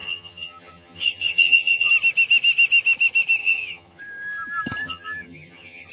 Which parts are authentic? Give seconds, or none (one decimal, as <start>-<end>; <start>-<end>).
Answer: 1.9-3.4; 4.0-4.8